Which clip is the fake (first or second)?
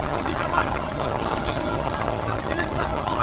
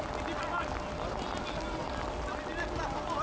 first